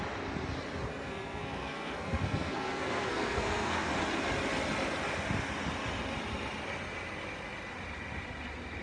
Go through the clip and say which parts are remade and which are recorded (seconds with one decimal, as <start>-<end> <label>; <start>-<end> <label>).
0.0-0.9 recorded; 0.9-3.9 remade; 3.9-8.8 recorded